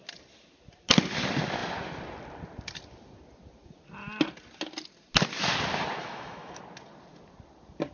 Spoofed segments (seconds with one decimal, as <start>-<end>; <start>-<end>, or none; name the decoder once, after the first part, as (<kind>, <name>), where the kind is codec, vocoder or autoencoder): 6.0-6.6 (autoencoder, DAC-VAE)